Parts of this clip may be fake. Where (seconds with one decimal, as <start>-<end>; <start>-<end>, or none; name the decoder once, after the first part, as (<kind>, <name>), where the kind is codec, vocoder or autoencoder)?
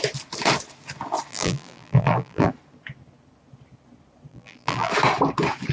1.3-2.5 (vocoder, BigVGAN v2); 4.3-4.9